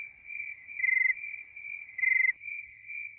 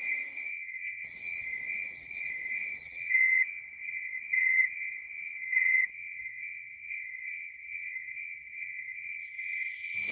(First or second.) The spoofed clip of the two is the second